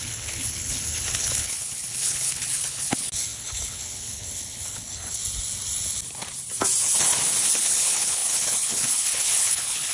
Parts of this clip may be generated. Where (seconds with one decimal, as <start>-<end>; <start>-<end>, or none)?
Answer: 0.0-5.2; 7.5-9.9